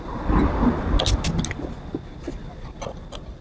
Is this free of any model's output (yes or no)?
yes